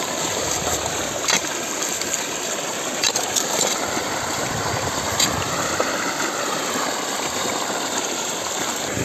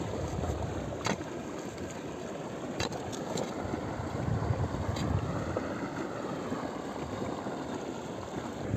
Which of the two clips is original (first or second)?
second